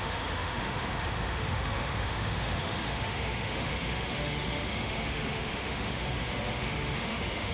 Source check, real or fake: fake